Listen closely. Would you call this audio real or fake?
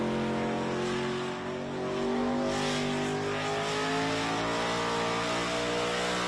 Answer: real